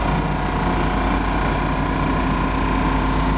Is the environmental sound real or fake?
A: real